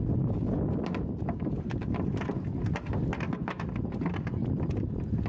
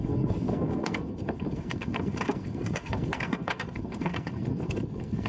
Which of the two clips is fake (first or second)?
second